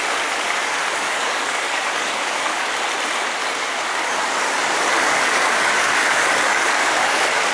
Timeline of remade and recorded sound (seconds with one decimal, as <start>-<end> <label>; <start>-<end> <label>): 0.0-0.6 recorded; 0.6-2.8 remade; 2.8-3.4 recorded; 3.4-7.5 remade